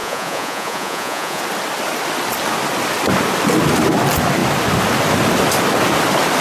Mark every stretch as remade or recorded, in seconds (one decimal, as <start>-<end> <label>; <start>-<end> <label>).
0.0-1.4 remade; 1.4-6.4 recorded